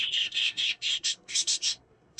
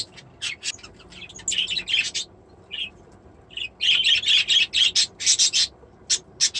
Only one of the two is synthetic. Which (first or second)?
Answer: first